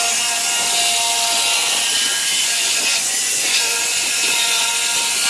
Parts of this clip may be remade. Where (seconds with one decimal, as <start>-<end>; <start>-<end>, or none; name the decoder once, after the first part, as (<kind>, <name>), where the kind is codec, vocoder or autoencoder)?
2.1-4.7 (vocoder, Vocos)